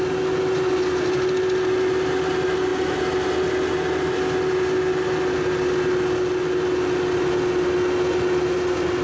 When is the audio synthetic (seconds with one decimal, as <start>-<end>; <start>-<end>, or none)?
none